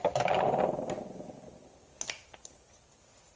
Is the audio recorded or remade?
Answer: recorded